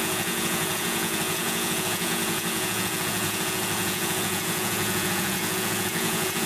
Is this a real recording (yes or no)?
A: no